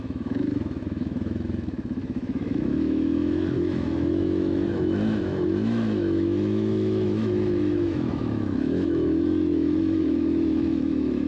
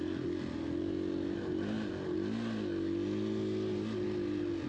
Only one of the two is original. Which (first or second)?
second